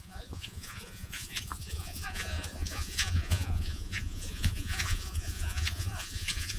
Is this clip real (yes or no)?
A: no